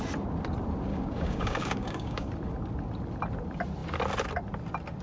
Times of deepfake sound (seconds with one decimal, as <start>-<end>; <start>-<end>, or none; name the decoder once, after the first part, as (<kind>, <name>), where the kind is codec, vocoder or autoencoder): 0.9-2.3 (codec, DAC)